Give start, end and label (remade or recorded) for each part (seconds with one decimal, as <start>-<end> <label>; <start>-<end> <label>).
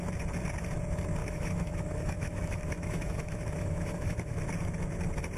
0.0-1.2 recorded; 1.2-4.4 remade; 4.4-5.4 recorded